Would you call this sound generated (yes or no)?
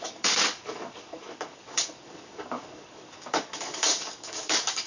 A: yes